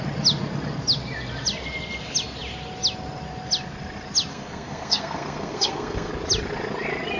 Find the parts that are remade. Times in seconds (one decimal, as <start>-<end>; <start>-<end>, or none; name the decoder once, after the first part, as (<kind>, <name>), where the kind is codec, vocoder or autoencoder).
4.3-6.1 (codec, SNAC)